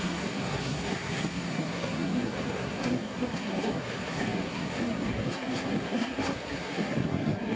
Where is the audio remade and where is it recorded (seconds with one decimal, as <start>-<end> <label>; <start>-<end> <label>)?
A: 0.0-7.6 remade